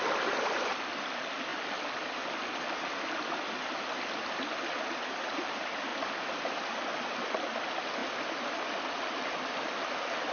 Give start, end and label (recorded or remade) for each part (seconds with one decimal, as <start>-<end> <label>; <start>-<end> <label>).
0.0-10.3 recorded